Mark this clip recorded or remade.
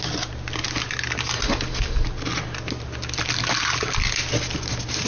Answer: recorded